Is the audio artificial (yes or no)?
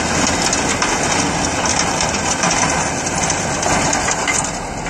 no